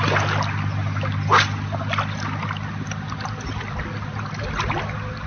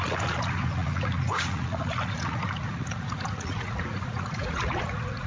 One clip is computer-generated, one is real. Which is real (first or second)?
first